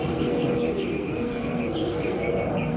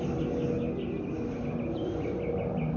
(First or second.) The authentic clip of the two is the second